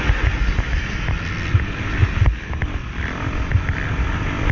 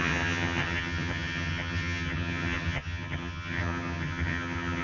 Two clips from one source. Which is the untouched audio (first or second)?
first